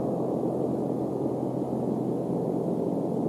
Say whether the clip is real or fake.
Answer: real